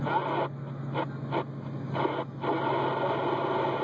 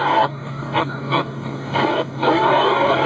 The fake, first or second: second